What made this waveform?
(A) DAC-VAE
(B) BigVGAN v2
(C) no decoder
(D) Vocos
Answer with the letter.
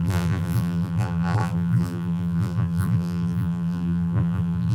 B